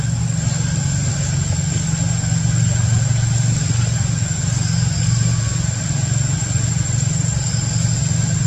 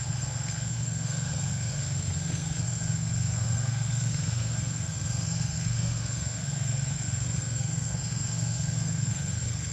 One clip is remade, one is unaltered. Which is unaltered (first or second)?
first